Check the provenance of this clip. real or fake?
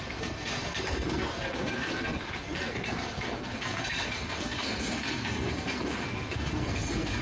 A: fake